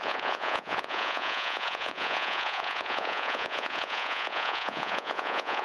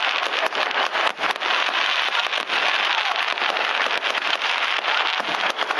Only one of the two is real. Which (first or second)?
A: second